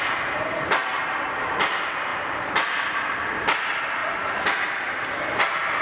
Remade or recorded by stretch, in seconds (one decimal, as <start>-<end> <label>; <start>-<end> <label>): 0.0-5.8 recorded